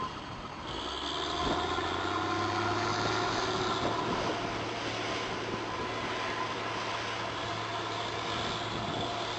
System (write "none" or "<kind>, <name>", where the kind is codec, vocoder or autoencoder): none